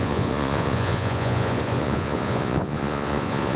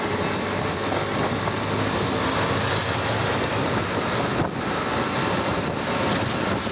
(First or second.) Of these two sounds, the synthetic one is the first